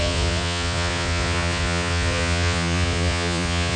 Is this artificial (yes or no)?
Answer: yes